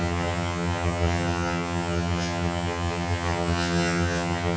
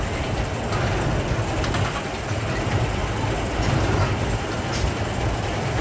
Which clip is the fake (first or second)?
first